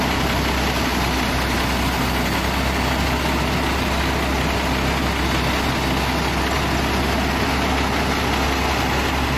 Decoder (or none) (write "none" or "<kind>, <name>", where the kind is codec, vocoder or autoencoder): none